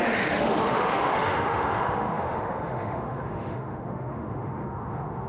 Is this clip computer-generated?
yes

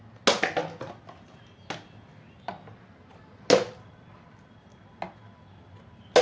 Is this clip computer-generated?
no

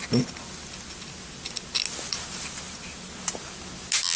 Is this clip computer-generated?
no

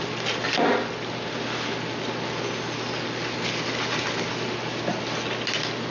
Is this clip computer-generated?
no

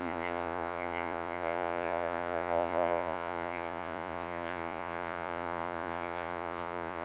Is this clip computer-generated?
yes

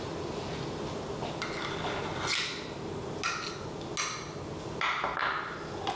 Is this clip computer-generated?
no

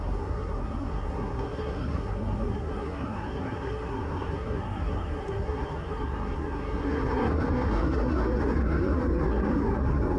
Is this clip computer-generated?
yes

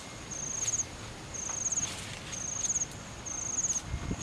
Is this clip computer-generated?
no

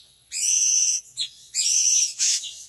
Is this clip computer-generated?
yes